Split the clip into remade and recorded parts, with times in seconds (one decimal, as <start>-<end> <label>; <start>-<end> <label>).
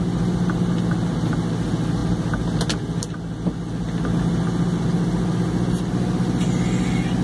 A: 0.0-7.2 recorded